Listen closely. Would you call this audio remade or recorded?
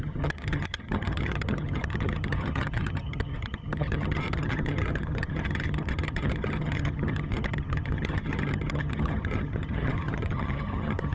remade